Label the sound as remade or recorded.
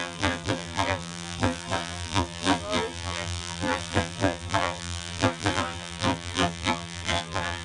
remade